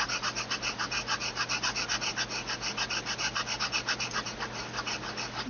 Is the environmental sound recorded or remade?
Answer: recorded